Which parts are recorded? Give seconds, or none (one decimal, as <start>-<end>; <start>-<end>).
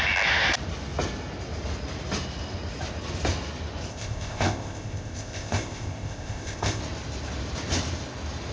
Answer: 0.0-3.9; 6.8-8.5